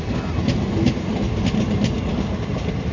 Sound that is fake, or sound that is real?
real